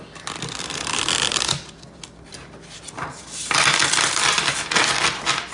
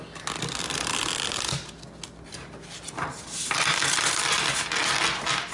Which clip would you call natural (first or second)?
second